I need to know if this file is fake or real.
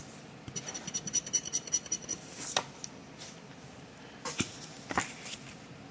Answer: real